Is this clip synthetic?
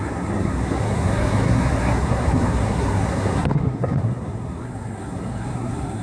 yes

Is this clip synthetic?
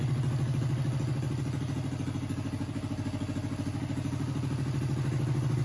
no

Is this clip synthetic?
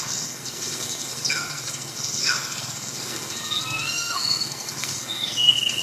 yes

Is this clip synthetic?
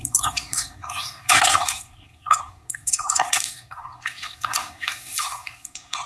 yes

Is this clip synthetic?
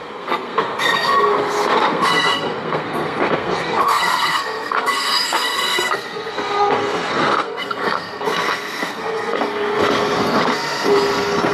yes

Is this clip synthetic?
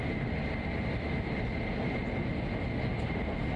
no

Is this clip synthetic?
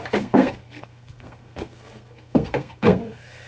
yes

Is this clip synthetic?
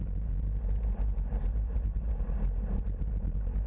no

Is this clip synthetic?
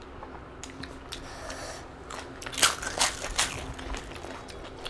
no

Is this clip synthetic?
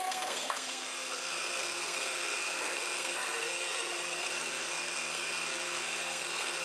yes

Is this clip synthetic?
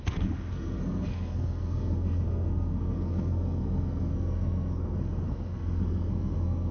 yes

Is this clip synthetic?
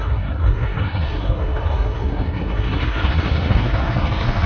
yes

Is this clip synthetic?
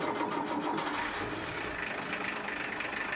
no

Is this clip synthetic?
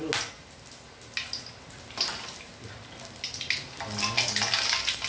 no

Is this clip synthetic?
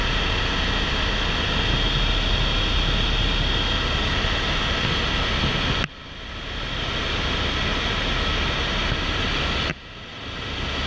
no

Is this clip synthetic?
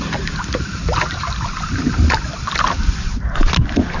no